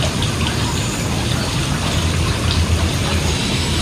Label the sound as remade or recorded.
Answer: recorded